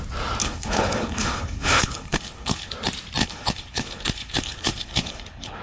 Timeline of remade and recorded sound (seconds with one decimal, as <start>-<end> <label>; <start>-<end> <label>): 0.0-0.4 recorded; 0.4-2.7 remade; 2.7-3.2 recorded; 3.2-5.6 remade